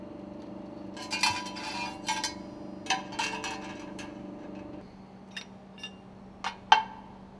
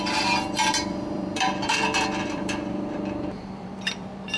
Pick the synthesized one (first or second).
second